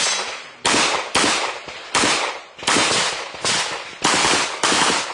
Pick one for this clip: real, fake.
real